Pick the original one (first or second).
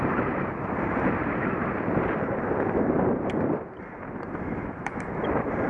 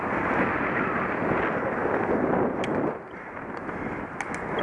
second